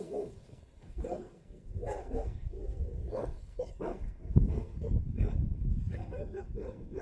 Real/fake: fake